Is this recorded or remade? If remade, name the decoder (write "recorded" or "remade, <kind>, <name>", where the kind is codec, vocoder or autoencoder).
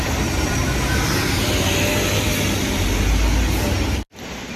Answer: recorded